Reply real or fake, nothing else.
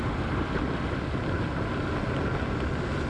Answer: real